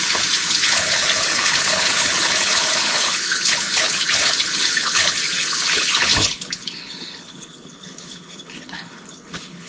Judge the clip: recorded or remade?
remade